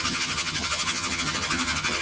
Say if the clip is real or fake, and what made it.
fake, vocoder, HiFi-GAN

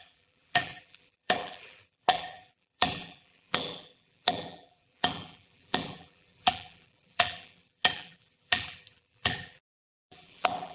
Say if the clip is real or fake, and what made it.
fake, vocoder, BigVGAN v2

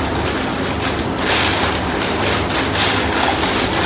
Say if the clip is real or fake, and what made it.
real